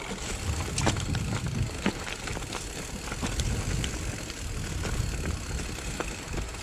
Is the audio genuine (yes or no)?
yes